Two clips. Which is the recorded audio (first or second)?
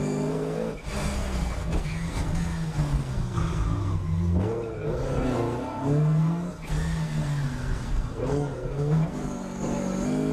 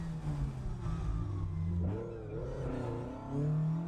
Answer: second